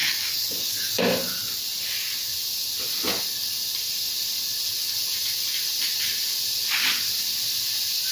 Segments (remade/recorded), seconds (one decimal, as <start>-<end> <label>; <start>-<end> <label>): 0.0-1.0 remade; 1.0-8.1 recorded